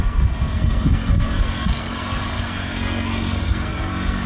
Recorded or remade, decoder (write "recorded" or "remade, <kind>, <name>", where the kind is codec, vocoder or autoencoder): remade, codec, SNAC